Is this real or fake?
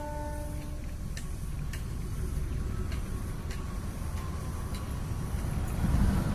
real